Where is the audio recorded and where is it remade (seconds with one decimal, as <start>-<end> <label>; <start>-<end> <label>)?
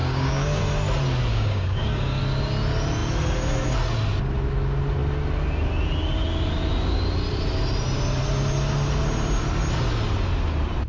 0.0-0.6 remade; 0.6-1.3 recorded; 1.3-2.2 remade; 2.2-10.9 recorded